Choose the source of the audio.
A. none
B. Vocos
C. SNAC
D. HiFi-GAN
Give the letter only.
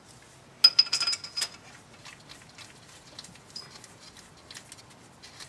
A